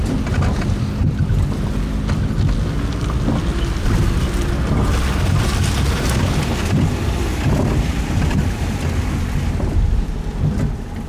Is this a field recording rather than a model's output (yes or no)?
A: yes